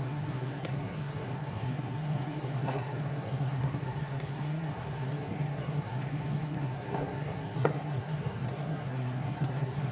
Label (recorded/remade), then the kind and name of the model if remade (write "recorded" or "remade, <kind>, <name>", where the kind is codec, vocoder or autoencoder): remade, codec, SNAC